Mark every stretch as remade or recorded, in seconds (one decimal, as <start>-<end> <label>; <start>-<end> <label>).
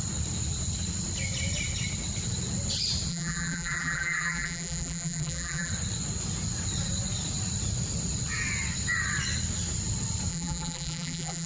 0.0-3.1 recorded; 3.1-5.7 remade; 5.7-10.3 recorded; 10.3-11.5 remade